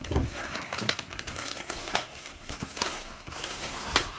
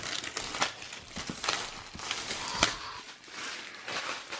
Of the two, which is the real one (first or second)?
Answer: second